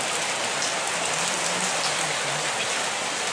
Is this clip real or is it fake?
real